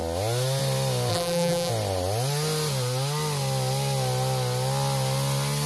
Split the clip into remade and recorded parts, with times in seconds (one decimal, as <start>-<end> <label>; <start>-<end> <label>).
0.0-1.1 recorded; 1.1-1.7 remade; 1.7-5.7 recorded